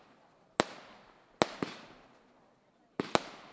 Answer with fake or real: real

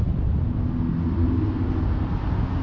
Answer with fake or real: real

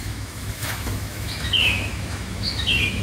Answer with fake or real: fake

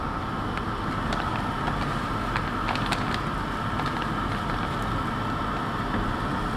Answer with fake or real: real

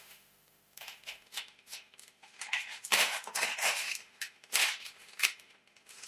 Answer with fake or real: fake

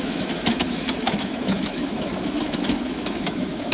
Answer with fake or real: fake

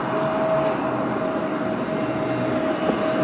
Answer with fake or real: real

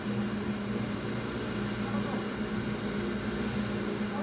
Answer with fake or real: real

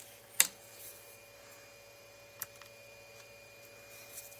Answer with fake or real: real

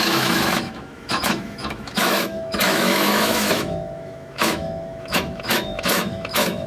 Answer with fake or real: fake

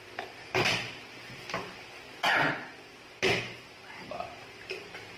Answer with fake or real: real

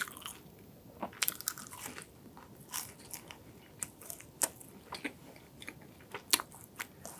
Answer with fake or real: real